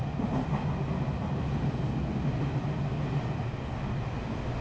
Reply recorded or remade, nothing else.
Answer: recorded